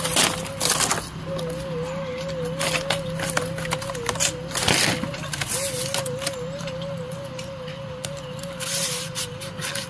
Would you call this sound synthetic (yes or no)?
no